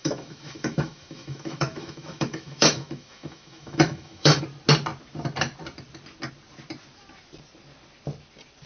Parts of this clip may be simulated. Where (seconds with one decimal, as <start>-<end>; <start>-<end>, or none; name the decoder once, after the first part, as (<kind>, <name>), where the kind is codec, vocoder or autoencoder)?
0.0-4.4 (autoencoder, DAC-VAE)